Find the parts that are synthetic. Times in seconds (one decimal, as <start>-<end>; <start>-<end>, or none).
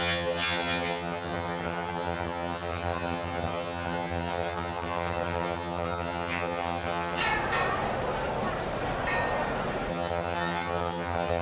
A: 0.0-7.2; 9.9-11.4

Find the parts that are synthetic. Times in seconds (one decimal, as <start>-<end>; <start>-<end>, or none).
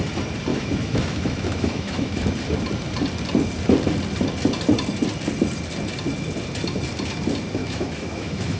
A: 0.5-2.2; 7.6-8.6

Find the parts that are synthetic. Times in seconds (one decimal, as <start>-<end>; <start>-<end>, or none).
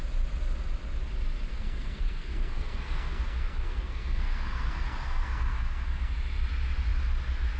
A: 1.5-6.1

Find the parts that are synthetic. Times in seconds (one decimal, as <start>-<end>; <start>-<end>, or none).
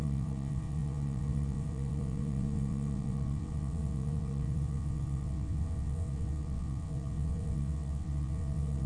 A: 0.0-8.9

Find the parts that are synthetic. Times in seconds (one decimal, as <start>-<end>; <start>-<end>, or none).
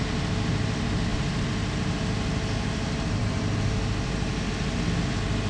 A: none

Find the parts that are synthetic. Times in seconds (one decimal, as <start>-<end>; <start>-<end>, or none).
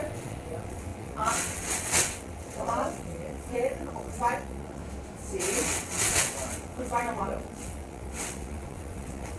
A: 0.0-4.8; 5.4-9.4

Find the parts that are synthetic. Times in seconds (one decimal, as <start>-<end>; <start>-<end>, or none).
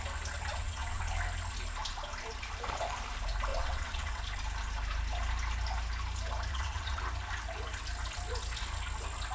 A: 0.5-1.0; 3.5-4.2; 6.5-7.0